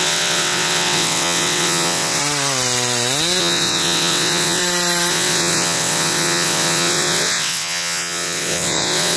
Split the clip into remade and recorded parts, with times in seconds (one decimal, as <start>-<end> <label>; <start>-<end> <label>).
0.0-2.2 remade; 2.2-3.4 recorded; 3.4-4.6 remade; 4.6-5.1 recorded; 5.1-9.2 remade